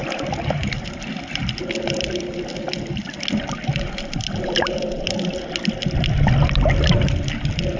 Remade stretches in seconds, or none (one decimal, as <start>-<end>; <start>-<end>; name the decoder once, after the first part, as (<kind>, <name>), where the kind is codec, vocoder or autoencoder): none